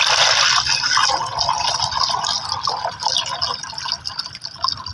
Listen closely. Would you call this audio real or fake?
real